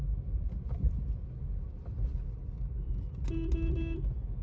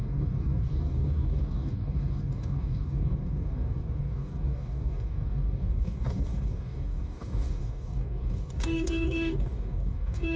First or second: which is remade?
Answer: second